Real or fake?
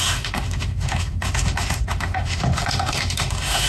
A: fake